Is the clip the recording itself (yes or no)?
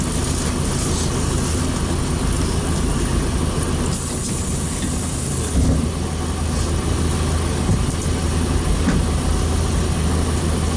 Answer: yes